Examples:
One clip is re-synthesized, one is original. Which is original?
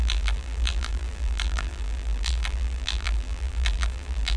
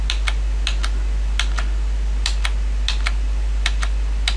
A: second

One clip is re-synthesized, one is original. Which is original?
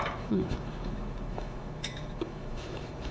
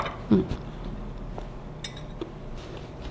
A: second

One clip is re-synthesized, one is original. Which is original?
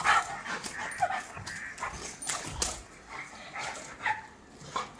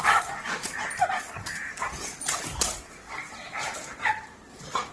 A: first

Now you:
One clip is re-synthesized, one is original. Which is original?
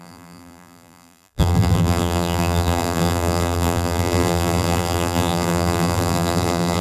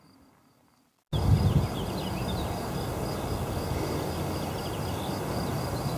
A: second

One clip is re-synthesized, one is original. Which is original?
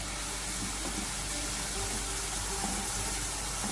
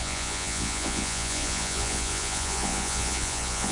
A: first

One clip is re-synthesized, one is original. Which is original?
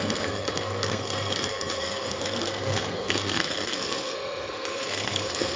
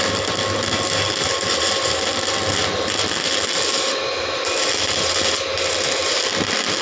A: second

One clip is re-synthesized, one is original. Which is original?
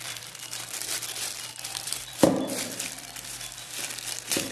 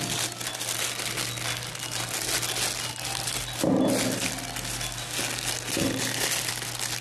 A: second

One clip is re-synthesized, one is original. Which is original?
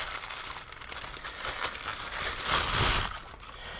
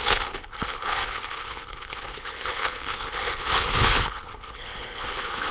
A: first